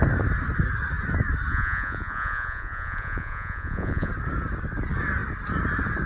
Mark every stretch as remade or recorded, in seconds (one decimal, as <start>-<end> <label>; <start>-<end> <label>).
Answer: 0.0-1.5 recorded; 1.5-4.1 remade; 4.1-6.1 recorded